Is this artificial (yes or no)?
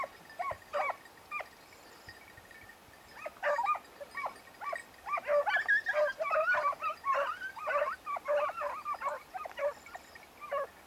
no